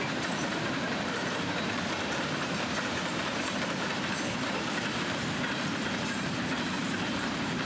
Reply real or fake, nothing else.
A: fake